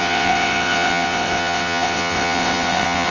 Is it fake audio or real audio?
fake